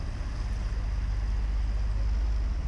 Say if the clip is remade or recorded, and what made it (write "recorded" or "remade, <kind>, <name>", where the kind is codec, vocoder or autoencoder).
recorded